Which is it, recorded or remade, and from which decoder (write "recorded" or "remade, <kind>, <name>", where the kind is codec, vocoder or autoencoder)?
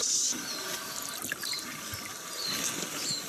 recorded